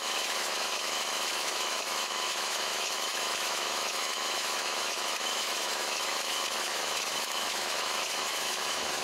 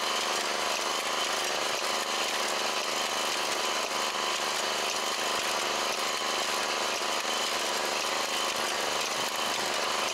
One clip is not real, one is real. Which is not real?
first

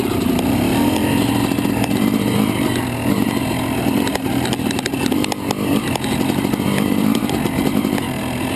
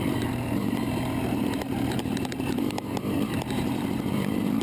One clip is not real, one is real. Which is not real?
second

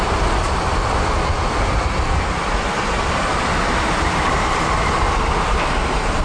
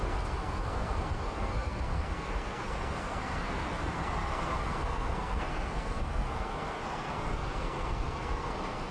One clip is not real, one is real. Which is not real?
second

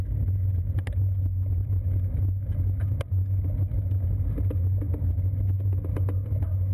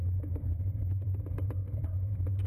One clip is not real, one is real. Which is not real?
second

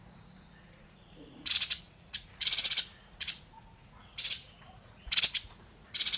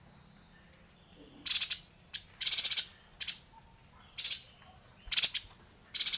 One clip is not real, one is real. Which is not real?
first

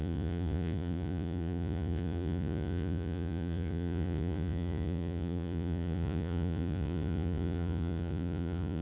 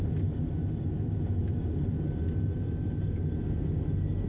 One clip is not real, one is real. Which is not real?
first